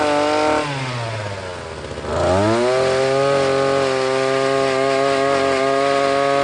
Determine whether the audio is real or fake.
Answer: real